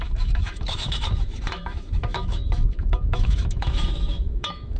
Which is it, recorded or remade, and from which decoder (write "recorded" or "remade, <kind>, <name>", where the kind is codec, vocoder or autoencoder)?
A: remade, autoencoder, DAC-VAE